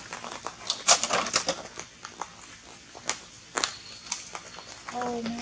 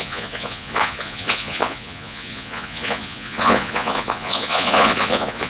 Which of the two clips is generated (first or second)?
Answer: second